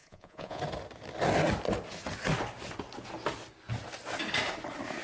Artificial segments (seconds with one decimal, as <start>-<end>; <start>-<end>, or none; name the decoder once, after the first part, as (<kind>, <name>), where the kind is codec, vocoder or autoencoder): 0.0-0.6 (vocoder, Vocos)